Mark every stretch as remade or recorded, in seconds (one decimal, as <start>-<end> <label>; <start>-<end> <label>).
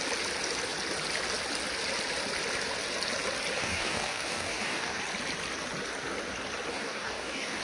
0.0-3.6 recorded; 3.6-5.0 remade; 5.0-6.7 recorded; 6.7-7.6 remade